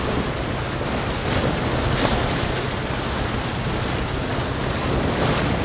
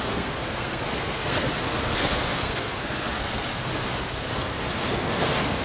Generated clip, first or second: second